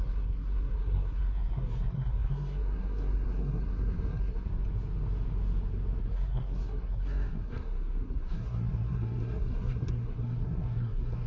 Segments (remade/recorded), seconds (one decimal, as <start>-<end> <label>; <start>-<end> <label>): 0.0-4.5 remade; 4.5-6.0 recorded; 6.0-11.3 remade